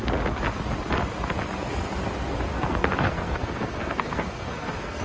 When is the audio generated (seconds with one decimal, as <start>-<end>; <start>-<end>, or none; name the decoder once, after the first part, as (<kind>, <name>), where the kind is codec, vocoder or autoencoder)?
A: 2.5-5.0 (codec, SNAC)